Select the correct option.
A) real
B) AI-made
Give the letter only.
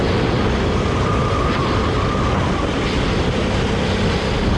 A